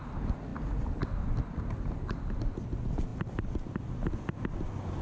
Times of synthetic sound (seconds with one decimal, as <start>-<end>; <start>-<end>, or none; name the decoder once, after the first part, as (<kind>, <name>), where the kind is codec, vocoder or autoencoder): none